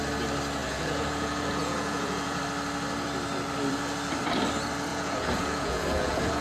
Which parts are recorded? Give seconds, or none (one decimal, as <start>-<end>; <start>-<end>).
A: 0.0-0.6; 2.4-4.9